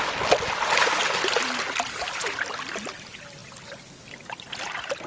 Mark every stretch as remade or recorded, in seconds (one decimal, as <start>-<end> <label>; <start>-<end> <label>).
0.0-5.1 recorded